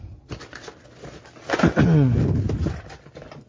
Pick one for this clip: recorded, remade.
recorded